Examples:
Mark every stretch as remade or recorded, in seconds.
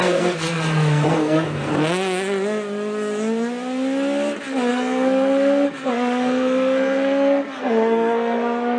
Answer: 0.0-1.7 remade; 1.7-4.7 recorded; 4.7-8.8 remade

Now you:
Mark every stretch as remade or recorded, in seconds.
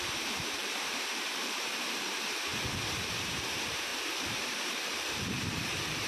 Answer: 0.0-2.5 remade; 2.5-3.1 recorded; 3.1-6.1 remade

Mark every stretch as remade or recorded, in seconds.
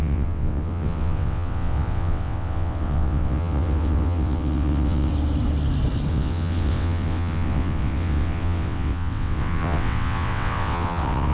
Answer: 0.0-5.1 remade; 5.1-6.1 recorded; 6.1-11.3 remade